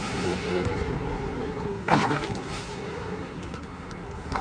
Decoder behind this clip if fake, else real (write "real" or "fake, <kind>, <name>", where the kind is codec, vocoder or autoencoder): fake, codec, SNAC